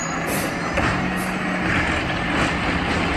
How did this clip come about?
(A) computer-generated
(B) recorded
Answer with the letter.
B